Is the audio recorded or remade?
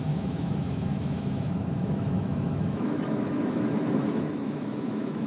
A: remade